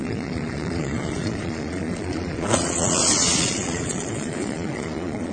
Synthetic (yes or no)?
yes